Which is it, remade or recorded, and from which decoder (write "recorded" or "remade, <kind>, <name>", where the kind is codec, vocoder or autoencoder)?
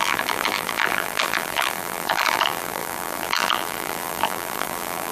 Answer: remade, vocoder, BigVGAN v2